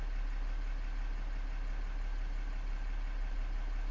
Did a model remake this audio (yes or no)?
no